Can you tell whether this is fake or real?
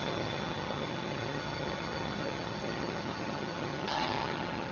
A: fake